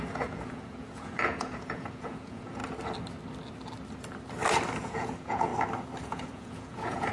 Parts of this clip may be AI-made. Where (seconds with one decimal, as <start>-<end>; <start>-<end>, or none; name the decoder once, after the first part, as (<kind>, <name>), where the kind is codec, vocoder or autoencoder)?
0.0-2.6 (vocoder, Vocos); 4.8-5.5; 6.0-7.1